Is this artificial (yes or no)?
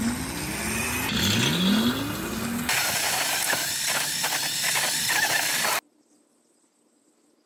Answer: no